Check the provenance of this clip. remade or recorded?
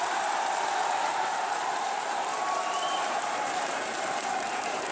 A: remade